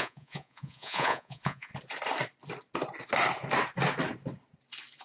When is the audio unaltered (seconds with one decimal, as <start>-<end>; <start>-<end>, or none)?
1.7-5.0